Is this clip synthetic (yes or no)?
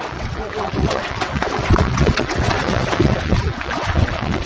yes